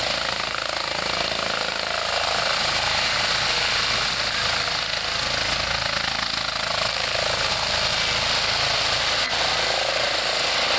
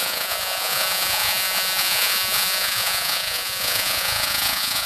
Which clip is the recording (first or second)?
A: first